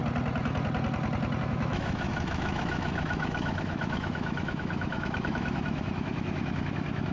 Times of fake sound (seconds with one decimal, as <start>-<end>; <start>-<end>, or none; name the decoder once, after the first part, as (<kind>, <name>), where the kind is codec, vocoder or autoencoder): 1.4-7.1 (autoencoder, DAC-VAE)